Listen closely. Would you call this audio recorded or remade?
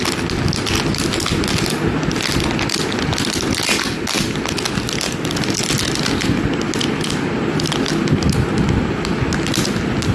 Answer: recorded